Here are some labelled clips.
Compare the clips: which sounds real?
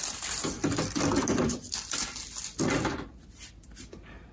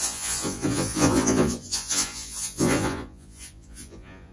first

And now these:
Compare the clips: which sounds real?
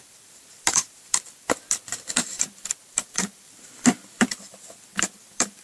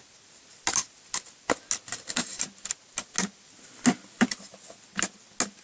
second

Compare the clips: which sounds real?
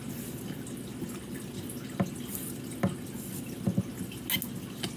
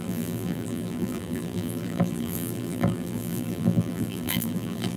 first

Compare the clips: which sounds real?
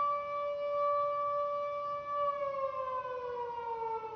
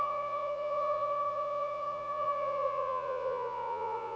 first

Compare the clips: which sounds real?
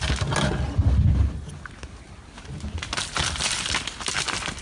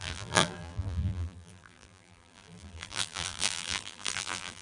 first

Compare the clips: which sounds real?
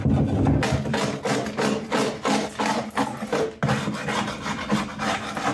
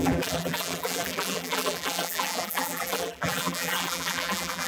first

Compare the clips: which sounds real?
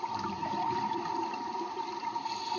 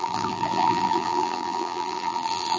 first